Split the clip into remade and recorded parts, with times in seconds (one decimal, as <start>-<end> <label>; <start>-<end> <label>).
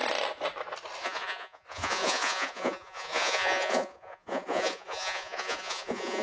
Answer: 0.0-1.0 recorded; 1.0-6.2 remade